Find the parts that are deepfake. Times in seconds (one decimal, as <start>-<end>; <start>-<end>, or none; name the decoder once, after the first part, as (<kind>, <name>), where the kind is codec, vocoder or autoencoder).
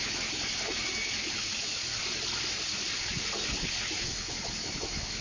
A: 0.0-1.9 (autoencoder, DAC-VAE); 3.8-5.2